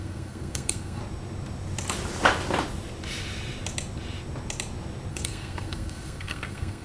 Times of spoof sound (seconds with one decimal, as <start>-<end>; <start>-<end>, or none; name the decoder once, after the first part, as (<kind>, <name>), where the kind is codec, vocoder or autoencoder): 0.0-1.0 (codec, SNAC); 5.1-6.8